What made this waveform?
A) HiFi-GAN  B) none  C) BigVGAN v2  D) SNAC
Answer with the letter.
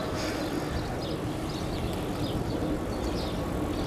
B